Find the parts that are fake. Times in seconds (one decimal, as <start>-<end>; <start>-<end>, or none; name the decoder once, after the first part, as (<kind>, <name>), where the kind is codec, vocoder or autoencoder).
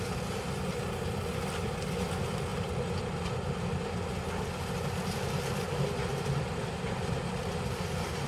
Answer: 6.1-7.1 (vocoder, BigVGAN v2)